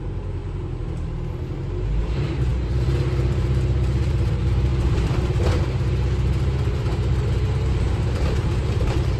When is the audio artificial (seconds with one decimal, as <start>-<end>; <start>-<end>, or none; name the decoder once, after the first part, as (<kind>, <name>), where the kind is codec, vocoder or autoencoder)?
0.0-0.4 (vocoder, BigVGAN v2); 2.0-4.7; 6.3-9.2